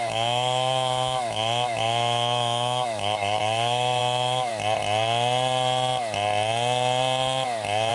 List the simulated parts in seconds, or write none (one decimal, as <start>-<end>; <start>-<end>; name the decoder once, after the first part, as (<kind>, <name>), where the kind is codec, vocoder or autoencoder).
0.0-4.5 (autoencoder, DAC-VAE)